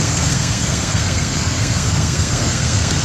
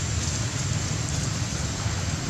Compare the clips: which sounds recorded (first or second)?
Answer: second